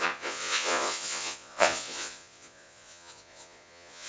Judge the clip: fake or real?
fake